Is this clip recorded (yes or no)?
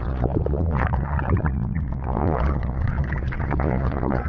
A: no